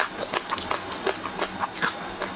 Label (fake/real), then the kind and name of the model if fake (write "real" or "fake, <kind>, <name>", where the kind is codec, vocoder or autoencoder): real